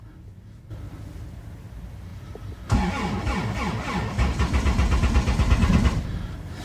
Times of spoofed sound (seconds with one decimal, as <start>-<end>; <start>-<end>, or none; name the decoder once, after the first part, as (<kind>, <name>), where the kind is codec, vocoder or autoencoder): none

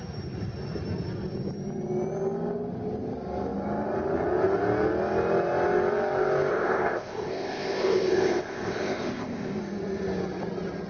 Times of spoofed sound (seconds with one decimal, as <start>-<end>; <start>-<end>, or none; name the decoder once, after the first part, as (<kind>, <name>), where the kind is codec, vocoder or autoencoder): 6.5-9.6 (codec, ZipCodec)

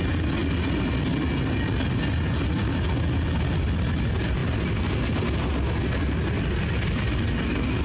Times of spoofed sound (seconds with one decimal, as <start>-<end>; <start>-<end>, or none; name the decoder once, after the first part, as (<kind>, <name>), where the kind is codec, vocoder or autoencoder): none

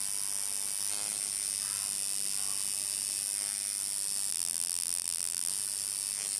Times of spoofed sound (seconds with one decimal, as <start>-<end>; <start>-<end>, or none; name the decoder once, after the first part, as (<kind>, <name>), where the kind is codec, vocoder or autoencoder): 4.3-5.5 (vocoder, BigVGAN v2)

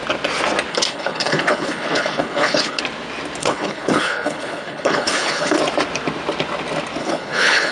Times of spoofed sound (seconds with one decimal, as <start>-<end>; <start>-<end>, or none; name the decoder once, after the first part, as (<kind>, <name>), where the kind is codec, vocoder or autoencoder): 0.7-2.8 (codec, HILCodec); 3.4-5.6; 7.0-7.7

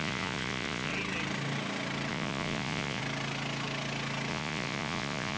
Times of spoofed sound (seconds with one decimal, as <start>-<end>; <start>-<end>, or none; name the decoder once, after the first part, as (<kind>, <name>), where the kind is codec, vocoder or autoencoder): 0.0-0.9 (vocoder, Vocos); 2.1-3.0; 4.3-5.4